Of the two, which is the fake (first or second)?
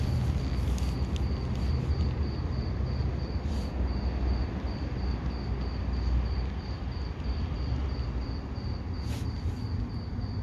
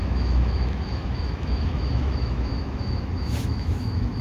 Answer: second